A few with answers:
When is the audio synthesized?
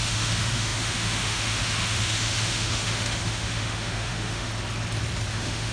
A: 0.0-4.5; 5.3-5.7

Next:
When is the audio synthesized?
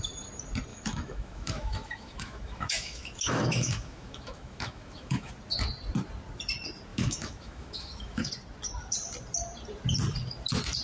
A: 0.7-5.3; 6.9-8.3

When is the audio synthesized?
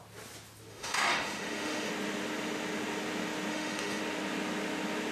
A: 0.7-1.9; 3.5-4.0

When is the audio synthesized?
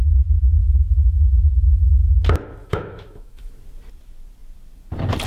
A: 0.6-2.2; 2.6-3.5